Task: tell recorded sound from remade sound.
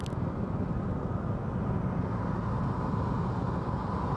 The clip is recorded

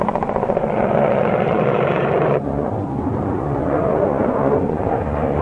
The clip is remade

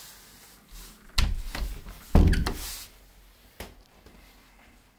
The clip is recorded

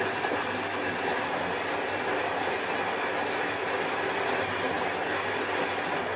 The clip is recorded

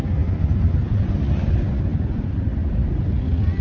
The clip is recorded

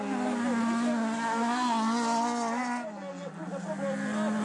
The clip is recorded